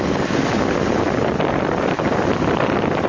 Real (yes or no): yes